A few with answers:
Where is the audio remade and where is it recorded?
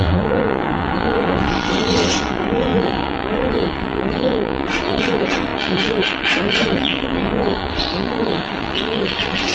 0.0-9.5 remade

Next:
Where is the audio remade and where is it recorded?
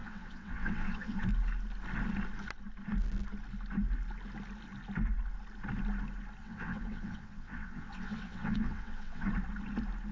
0.0-1.3 remade; 1.3-6.4 recorded; 6.4-9.3 remade; 9.3-10.1 recorded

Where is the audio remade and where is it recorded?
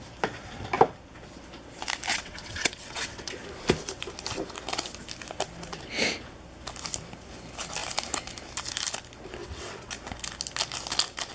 0.0-2.1 recorded; 2.1-3.3 remade; 3.3-9.4 recorded; 9.4-9.9 remade; 9.9-11.3 recorded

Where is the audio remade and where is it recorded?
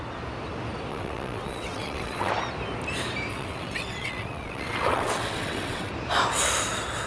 0.0-0.9 recorded; 0.9-2.3 remade; 2.3-3.3 recorded; 3.3-5.9 remade; 5.9-7.1 recorded